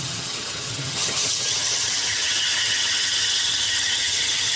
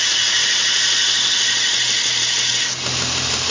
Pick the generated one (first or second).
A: first